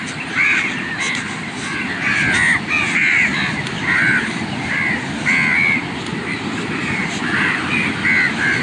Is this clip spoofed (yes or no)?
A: no